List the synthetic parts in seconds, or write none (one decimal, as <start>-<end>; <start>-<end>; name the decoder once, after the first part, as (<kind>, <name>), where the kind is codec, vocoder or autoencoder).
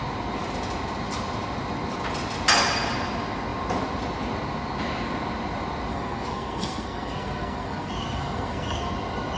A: 5.9-8.9 (codec, SNAC)